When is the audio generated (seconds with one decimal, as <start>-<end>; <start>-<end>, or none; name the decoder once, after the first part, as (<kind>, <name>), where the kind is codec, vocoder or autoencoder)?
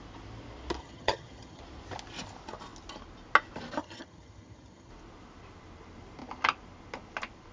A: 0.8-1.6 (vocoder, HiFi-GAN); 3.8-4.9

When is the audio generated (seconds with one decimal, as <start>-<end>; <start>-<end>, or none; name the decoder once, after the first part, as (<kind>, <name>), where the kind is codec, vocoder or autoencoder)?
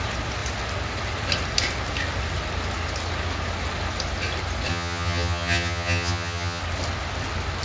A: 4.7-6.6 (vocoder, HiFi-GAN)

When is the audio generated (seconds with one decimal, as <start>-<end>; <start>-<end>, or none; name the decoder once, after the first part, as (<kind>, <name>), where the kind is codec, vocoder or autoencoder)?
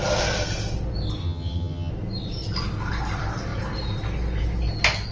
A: 1.2-1.9 (vocoder, HiFi-GAN)